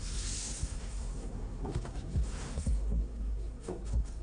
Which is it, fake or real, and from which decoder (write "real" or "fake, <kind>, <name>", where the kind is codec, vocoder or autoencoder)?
fake, codec, SNAC